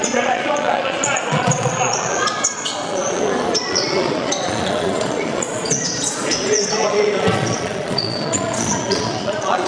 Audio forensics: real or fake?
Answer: fake